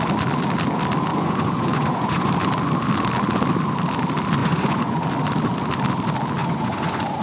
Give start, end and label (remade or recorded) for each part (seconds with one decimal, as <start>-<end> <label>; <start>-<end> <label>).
0.0-1.1 recorded; 1.1-2.3 remade; 2.3-4.4 recorded; 4.4-5.1 remade; 5.1-6.4 recorded; 6.4-7.2 remade